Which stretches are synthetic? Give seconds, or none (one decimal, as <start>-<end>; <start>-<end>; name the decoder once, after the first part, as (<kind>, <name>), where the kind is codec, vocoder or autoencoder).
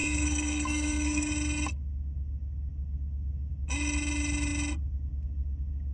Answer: 0.0-1.3 (codec, SNAC)